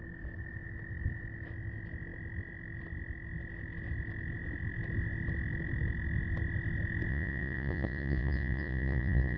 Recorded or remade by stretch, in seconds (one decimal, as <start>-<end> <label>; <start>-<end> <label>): 0.0-7.1 recorded; 7.1-9.4 remade